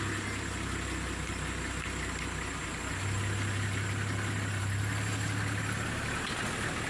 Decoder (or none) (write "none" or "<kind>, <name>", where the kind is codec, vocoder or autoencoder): none